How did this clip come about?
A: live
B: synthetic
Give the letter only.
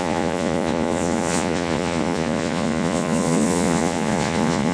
B